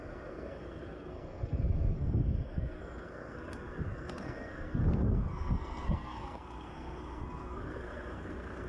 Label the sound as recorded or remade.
remade